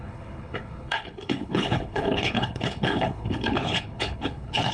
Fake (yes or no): yes